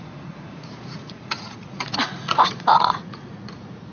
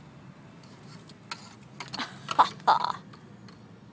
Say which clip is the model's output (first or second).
first